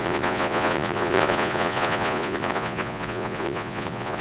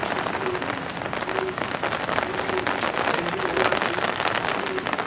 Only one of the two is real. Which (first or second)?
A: second